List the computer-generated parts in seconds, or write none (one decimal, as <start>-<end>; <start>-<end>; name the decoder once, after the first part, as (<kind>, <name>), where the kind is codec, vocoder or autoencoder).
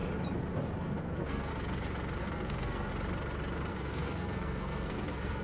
0.8-1.5 (codec, SNAC); 2.2-2.9; 3.7-5.4